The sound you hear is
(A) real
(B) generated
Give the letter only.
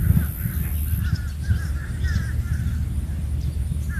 A